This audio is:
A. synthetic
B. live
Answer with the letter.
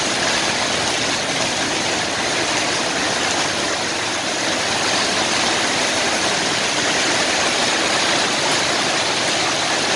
B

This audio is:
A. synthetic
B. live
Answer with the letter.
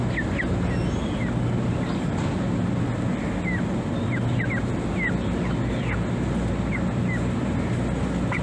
B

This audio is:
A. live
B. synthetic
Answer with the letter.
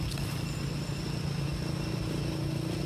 A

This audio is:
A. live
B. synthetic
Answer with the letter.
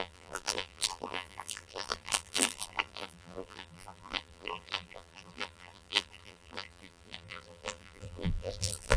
B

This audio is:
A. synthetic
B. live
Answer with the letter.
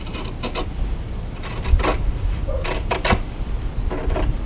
B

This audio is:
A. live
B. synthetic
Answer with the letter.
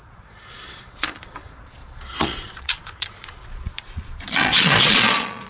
B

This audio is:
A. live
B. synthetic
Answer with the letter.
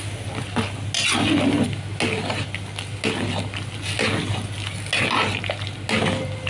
A